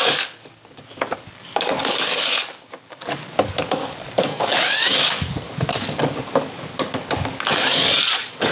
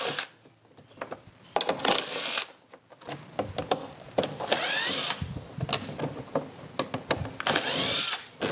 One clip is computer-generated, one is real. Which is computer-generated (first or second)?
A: first